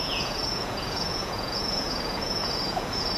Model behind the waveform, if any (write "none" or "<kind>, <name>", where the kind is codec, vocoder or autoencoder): vocoder, Vocos